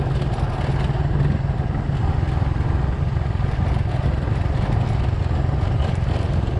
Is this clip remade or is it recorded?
recorded